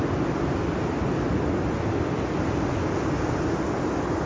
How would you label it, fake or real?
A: real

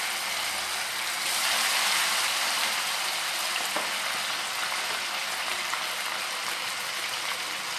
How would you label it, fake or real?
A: real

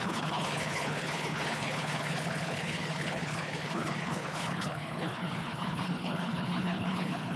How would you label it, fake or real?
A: fake